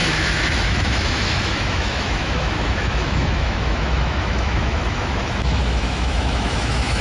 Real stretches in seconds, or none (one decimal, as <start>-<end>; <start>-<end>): none